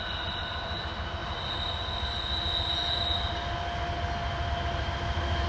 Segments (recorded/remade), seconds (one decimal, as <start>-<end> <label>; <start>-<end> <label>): 0.0-5.5 recorded